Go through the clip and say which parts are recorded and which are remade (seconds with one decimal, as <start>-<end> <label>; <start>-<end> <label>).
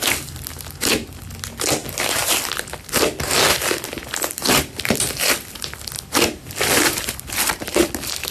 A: 0.0-8.3 recorded